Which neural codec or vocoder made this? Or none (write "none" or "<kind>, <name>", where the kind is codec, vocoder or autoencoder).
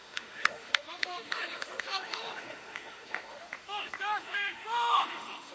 autoencoder, DAC-VAE